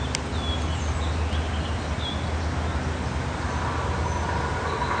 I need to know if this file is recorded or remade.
recorded